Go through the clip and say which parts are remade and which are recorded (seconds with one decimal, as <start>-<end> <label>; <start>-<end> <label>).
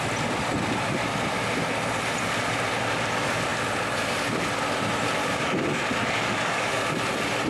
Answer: 0.0-5.2 recorded; 5.2-7.0 remade; 7.0-7.5 recorded